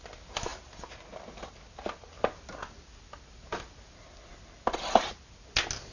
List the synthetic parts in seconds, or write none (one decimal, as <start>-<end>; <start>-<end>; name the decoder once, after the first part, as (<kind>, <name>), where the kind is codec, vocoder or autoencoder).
none